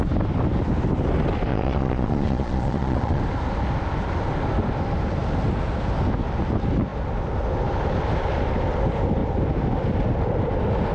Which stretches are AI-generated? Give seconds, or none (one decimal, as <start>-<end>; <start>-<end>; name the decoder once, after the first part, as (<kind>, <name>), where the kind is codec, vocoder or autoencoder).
1.5-3.2 (vocoder, Vocos)